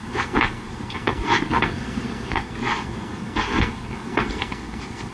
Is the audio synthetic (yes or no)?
yes